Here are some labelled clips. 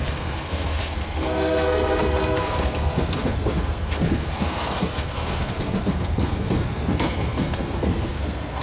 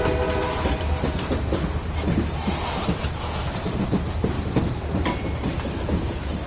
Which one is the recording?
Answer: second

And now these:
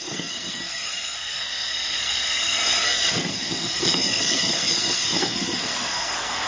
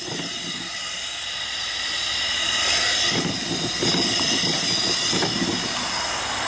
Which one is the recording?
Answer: second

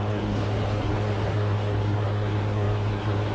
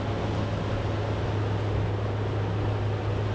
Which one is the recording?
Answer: second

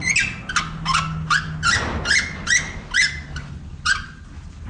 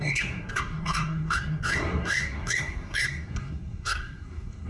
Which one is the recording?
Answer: first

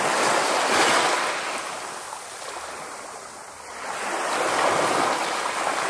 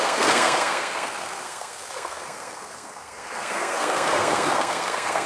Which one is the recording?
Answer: first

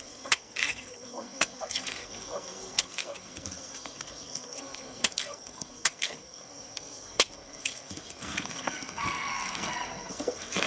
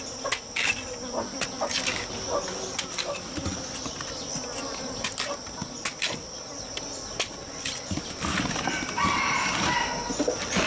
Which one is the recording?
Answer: second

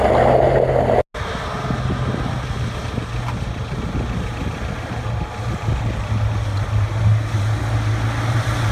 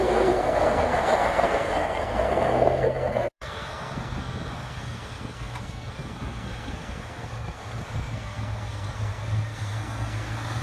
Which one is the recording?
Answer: first